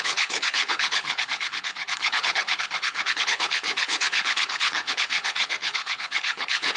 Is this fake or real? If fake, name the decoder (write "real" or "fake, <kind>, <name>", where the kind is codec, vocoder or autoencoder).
fake, codec, HILCodec